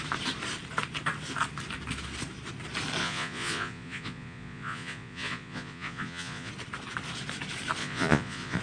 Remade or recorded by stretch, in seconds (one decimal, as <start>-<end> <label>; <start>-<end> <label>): 0.0-3.0 recorded; 3.0-6.5 remade; 6.5-7.8 recorded; 7.8-8.6 remade